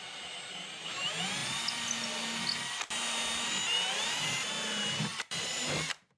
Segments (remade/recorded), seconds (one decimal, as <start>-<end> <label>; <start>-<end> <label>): 0.0-5.1 recorded; 5.1-5.7 remade; 5.7-6.2 recorded